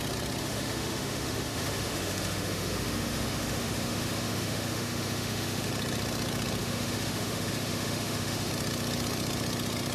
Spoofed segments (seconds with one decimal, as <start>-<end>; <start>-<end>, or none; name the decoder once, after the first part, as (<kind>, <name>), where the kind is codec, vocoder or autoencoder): 0.4-5.7 (autoencoder, DAC-VAE); 6.6-8.5